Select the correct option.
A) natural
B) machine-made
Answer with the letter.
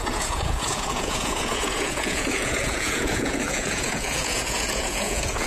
B